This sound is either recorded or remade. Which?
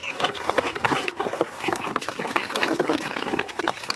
remade